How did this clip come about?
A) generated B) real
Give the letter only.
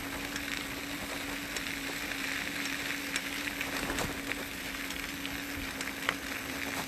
B